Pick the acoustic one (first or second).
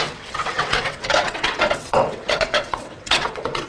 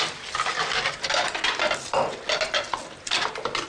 second